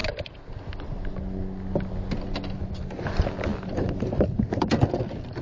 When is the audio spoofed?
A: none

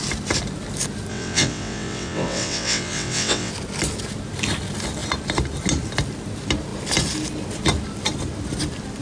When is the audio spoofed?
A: 1.1-3.5 (vocoder, WaveNeXt)

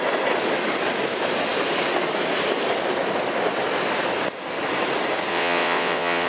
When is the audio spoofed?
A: 5.3-6.3 (vocoder, WaveNeXt)

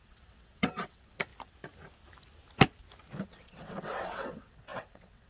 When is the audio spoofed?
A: 0.0-1.3 (vocoder, WaveNeXt); 3.2-5.3

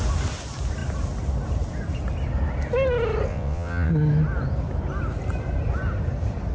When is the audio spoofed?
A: 3.3-3.9 (vocoder, WaveNeXt)

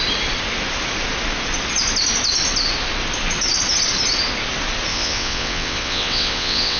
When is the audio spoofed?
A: 4.9-6.8 (vocoder, WaveNeXt)

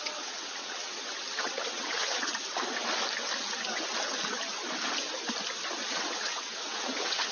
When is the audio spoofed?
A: 0.0-0.9 (vocoder, WaveNeXt); 1.4-2.3; 5.9-7.3

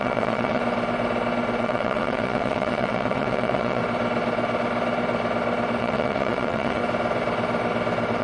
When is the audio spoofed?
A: 0.0-0.6 (vocoder, WaveNeXt); 1.6-3.8; 5.8-6.8